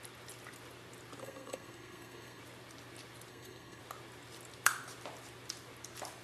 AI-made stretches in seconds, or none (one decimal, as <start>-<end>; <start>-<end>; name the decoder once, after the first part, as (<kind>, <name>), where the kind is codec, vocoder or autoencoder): 1.2-2.4 (codec, SNAC); 3.3-3.8